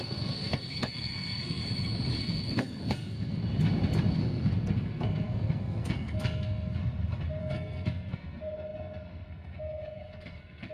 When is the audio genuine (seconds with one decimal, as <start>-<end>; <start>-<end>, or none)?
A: 1.6-2.2; 3.4-4.1; 6.8-7.4